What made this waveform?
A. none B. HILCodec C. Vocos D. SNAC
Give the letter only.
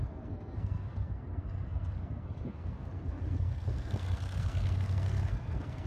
D